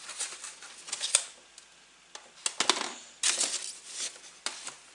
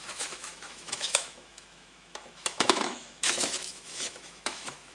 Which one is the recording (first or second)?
first